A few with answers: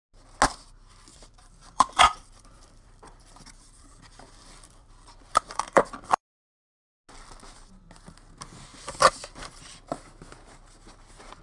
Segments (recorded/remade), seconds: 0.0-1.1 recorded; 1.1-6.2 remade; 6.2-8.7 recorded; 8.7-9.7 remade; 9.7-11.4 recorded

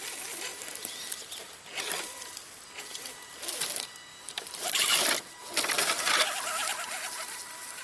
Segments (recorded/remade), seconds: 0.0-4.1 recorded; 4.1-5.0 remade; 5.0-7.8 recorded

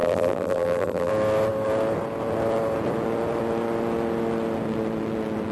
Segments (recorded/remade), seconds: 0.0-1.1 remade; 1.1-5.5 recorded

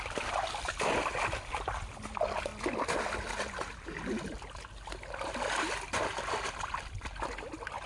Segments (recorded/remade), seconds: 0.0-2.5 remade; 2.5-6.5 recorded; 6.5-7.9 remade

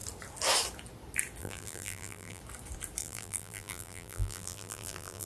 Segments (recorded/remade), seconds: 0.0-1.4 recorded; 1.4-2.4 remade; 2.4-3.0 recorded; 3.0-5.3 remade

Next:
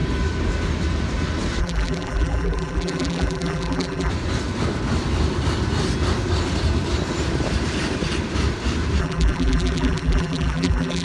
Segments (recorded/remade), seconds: 0.0-1.6 recorded; 1.6-4.1 remade; 4.1-9.0 recorded; 9.0-11.0 remade

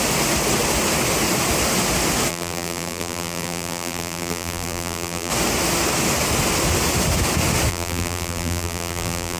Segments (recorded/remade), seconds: 0.0-2.3 recorded; 2.3-5.3 remade; 5.3-7.7 recorded; 7.7-9.4 remade

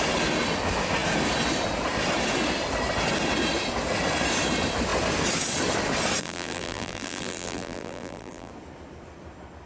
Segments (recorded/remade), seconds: 0.0-6.2 recorded; 6.2-8.5 remade; 8.5-9.7 recorded